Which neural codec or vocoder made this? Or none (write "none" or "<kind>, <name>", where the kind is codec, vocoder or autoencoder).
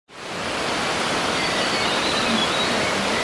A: vocoder, BigVGAN v2